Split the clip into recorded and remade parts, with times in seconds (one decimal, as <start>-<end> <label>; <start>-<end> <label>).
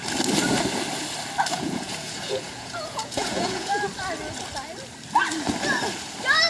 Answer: 0.0-1.5 recorded; 1.5-3.7 remade; 3.7-6.5 recorded